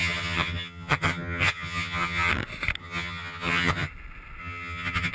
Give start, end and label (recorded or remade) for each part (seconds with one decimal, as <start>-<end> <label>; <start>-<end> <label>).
0.0-2.3 remade; 2.3-2.8 recorded; 2.8-3.9 remade; 3.9-4.4 recorded; 4.4-5.1 remade

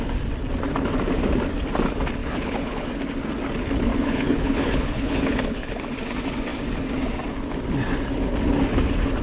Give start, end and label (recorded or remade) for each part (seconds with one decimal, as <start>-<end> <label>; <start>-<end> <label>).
0.0-2.2 recorded; 2.2-2.9 remade; 2.9-3.9 recorded; 3.9-5.8 remade; 5.8-9.2 recorded

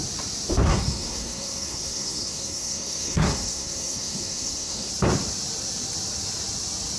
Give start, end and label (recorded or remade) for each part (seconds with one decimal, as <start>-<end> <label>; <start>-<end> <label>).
0.0-0.7 recorded; 0.7-4.9 remade; 4.9-7.0 recorded

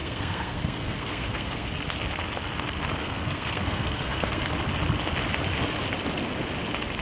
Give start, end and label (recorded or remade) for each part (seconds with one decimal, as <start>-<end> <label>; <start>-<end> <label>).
0.0-1.7 remade; 1.7-3.0 recorded; 3.0-4.5 remade; 4.5-7.0 recorded